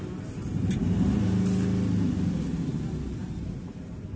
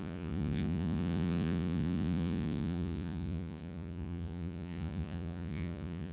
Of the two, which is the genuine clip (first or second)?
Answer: first